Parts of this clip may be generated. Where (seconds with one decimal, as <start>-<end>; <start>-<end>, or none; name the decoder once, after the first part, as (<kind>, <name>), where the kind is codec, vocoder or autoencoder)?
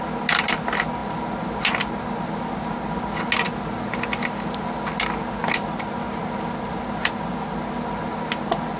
none